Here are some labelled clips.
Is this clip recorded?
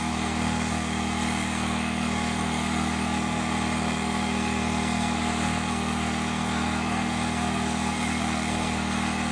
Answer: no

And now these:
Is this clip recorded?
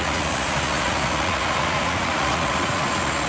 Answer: no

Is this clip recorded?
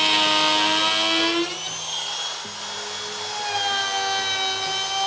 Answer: yes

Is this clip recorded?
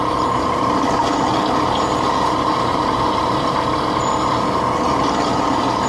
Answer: yes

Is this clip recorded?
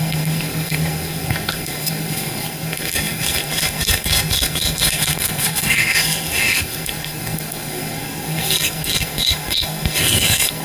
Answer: no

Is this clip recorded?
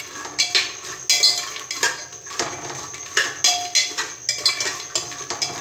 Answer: yes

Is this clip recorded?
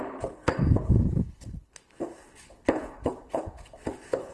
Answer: no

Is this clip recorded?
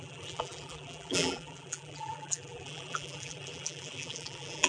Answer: no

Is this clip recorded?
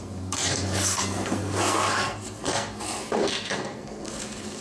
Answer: no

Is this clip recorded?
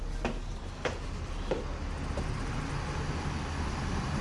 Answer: yes